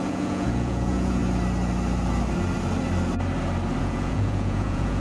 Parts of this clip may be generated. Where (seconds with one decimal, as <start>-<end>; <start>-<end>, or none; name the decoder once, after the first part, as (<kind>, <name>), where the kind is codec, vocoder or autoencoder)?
0.0-1.2 (vocoder, Vocos); 3.8-5.0